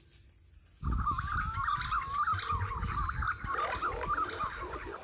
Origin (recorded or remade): recorded